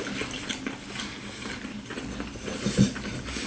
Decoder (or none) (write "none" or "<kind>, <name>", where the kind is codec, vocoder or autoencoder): none